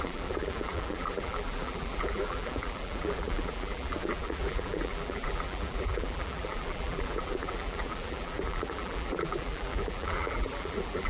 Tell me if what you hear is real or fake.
fake